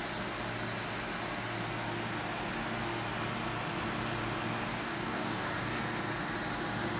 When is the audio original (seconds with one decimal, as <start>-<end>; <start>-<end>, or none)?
0.0-4.7; 5.8-7.0